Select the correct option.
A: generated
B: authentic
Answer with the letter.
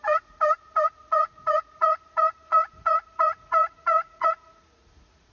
A